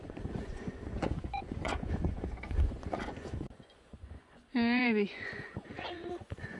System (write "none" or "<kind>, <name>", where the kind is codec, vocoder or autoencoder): vocoder, Vocos